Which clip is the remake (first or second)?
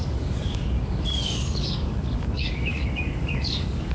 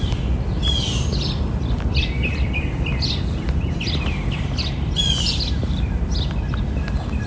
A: first